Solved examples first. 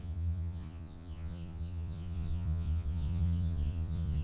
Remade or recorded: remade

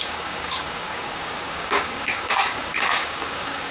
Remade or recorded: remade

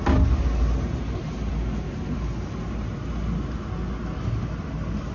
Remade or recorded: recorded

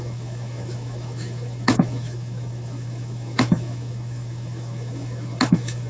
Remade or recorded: remade